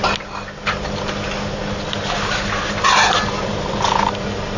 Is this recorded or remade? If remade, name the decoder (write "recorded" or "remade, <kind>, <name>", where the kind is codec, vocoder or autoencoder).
recorded